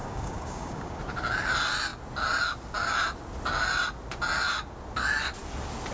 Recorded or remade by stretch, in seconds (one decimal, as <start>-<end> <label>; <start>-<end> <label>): 0.0-1.0 remade; 1.0-5.9 recorded